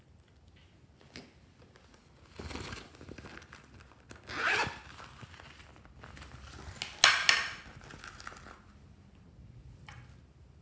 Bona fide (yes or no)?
yes